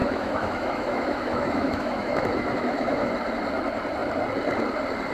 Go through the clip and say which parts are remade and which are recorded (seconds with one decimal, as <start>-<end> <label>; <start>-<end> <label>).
0.0-3.1 remade; 3.1-5.1 recorded